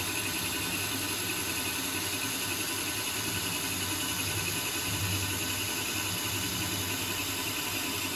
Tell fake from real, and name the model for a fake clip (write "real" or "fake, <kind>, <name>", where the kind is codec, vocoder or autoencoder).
real